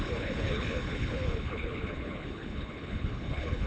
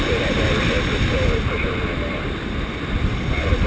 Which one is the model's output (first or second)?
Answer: first